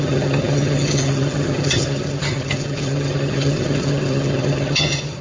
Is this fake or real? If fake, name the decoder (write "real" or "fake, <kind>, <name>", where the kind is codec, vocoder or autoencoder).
fake, vocoder, HiFi-GAN